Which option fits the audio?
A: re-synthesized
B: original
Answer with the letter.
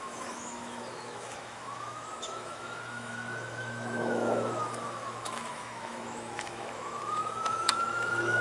A